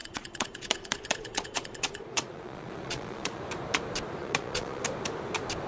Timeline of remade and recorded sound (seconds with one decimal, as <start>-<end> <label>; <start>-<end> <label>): 0.0-3.4 remade; 3.4-4.2 recorded; 4.2-4.8 remade; 4.8-5.7 recorded